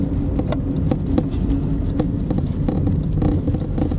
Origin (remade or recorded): recorded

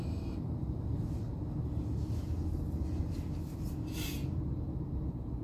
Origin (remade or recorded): recorded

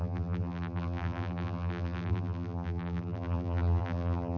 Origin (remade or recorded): remade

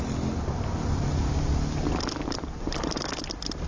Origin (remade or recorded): recorded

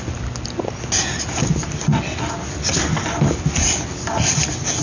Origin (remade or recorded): recorded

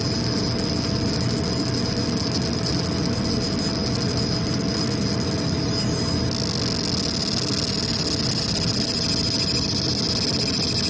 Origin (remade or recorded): recorded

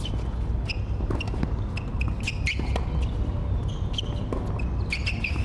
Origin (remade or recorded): recorded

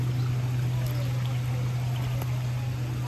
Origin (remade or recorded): recorded